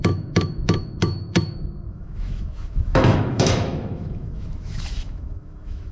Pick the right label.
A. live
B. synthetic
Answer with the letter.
B